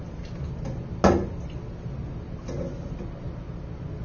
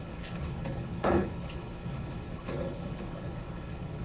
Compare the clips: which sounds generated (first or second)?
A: second